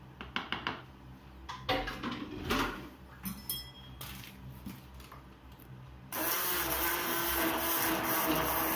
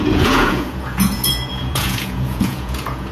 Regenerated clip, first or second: second